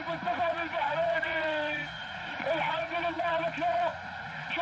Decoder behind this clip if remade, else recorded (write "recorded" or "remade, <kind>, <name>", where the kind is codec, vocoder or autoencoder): remade, vocoder, Vocos